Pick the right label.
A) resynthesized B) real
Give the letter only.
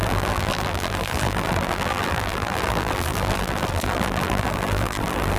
A